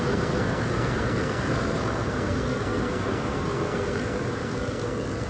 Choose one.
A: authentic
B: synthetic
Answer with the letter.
B